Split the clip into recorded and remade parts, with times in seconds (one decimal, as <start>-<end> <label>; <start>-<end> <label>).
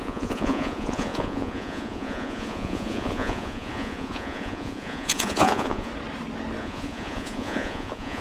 0.0-5.9 remade; 5.9-6.6 recorded; 6.6-8.2 remade